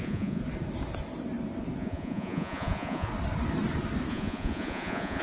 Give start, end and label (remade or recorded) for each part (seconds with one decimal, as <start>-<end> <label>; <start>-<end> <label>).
0.0-0.4 remade; 0.4-1.8 recorded; 1.8-3.1 remade; 3.1-4.1 recorded; 4.1-5.2 remade